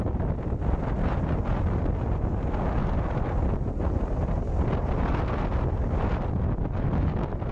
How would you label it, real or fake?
real